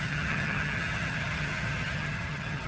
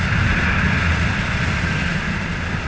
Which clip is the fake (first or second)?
first